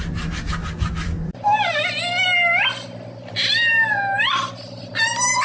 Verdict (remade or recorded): recorded